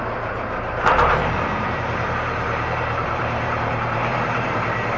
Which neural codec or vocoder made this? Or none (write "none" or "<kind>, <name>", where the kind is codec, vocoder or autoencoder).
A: vocoder, BigVGAN v2